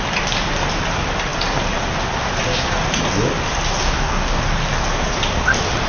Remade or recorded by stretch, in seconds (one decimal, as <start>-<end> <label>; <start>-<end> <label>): 0.0-3.8 recorded; 3.8-4.4 remade; 4.4-5.9 recorded